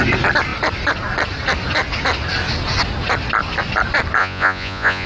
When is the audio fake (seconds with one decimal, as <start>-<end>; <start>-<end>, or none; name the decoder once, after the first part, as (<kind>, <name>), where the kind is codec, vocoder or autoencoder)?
4.2-5.1 (vocoder, Vocos)